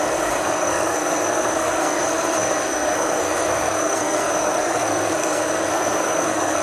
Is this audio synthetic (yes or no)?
yes